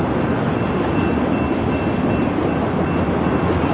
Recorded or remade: recorded